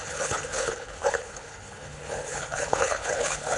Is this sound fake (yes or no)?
yes